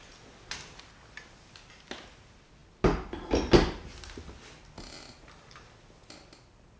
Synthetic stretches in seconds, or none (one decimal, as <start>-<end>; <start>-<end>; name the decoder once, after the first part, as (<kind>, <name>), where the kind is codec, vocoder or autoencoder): none